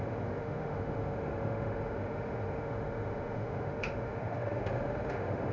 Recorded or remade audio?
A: remade